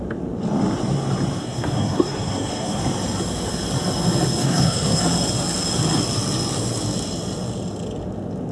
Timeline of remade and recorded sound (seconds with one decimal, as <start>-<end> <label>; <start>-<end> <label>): 0.0-1.4 recorded; 1.4-2.8 remade; 2.8-4.4 recorded; 4.4-5.0 remade; 5.0-8.5 recorded